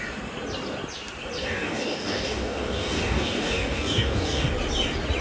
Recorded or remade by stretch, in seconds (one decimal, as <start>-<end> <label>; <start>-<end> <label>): 0.0-1.4 recorded; 1.4-4.5 remade; 4.5-5.2 recorded